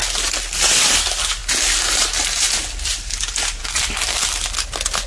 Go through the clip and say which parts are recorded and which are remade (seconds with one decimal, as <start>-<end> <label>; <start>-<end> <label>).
0.0-5.1 recorded